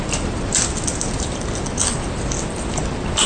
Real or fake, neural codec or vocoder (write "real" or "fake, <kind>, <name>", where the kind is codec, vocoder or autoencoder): real